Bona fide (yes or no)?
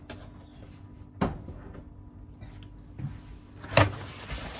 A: yes